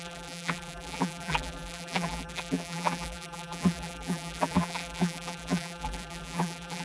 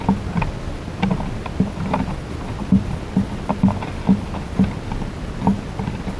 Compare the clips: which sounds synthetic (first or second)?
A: first